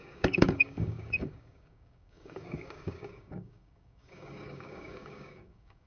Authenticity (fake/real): fake